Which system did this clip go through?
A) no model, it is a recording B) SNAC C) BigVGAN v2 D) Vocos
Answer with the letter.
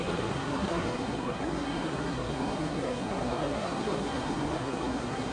B